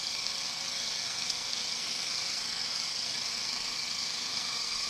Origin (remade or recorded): remade